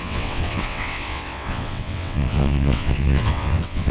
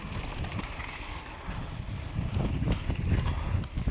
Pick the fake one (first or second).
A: first